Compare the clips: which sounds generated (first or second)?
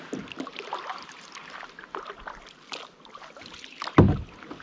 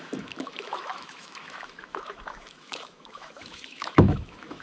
second